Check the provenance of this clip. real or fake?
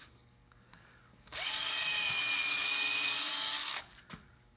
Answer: fake